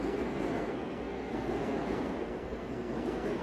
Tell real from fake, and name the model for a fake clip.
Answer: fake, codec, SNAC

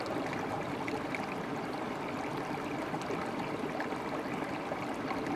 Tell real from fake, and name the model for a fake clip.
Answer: fake, vocoder, BigVGAN v2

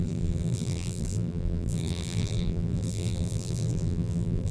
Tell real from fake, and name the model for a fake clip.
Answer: fake, vocoder, BigVGAN v2